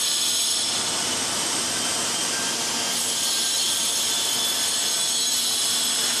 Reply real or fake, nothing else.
real